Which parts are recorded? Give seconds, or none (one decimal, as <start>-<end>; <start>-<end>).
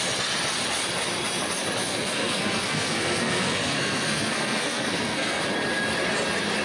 0.0-1.8; 5.4-6.6